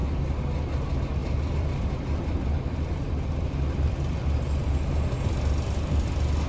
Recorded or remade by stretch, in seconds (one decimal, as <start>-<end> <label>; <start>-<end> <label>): 0.0-1.2 recorded; 1.2-4.7 remade; 4.7-6.5 recorded

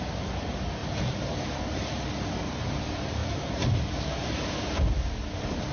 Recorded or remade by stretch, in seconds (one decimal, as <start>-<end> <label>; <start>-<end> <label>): 0.0-0.8 recorded; 0.8-2.1 remade; 2.1-3.2 recorded; 3.2-4.8 remade; 4.8-5.7 recorded

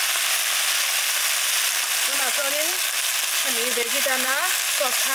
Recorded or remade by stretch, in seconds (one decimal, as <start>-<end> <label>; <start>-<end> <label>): 0.0-2.4 remade; 2.4-3.9 recorded; 3.9-5.1 remade

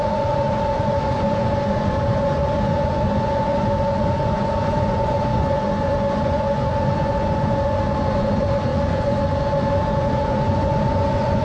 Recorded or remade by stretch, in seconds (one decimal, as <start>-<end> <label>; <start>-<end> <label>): 0.0-11.4 remade

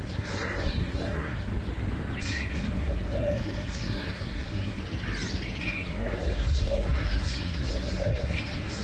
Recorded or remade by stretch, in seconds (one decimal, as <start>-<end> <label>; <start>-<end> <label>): 0.0-1.5 remade; 1.5-2.2 recorded; 2.2-4.8 remade; 4.8-5.6 recorded; 5.6-8.8 remade

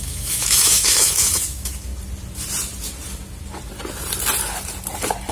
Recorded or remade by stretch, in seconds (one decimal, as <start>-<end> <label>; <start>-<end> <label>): 0.0-1.9 remade; 1.9-5.3 recorded

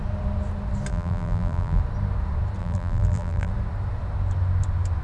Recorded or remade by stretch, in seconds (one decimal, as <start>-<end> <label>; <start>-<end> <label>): 0.0-0.9 recorded; 0.9-1.8 remade; 1.8-2.6 recorded; 2.6-3.5 remade; 3.5-5.0 recorded

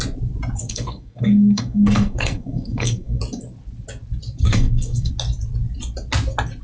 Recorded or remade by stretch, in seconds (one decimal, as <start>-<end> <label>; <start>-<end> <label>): 0.0-0.6 recorded; 0.6-3.2 remade; 3.2-4.4 recorded; 4.4-5.1 remade; 5.1-6.6 recorded